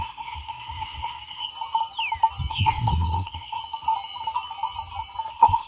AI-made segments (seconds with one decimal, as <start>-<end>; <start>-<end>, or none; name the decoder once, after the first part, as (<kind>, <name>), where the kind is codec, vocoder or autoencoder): 0.0-1.5 (codec, SNAC); 2.5-3.6; 5.3-5.7